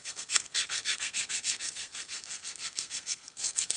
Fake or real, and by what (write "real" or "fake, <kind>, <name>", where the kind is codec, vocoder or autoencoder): fake, codec, SNAC